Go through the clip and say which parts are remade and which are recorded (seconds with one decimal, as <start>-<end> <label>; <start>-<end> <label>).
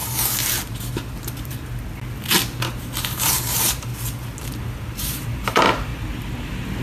0.0-2.6 recorded; 2.6-3.9 remade; 3.9-4.6 recorded; 4.6-5.9 remade; 5.9-6.8 recorded